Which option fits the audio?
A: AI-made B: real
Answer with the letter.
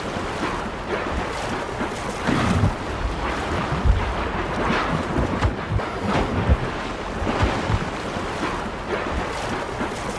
B